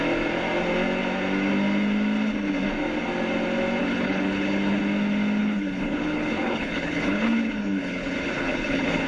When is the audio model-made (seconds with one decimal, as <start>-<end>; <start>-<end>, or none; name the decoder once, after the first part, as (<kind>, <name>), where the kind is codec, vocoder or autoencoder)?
3.8-4.8 (codec, HILCodec); 5.4-9.1